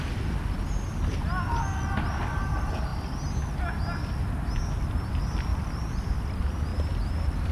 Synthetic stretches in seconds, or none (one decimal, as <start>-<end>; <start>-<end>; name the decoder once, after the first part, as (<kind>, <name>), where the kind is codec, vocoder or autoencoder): 5.5-6.3 (vocoder, BigVGAN v2); 6.7-7.5